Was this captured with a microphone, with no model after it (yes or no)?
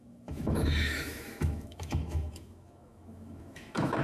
no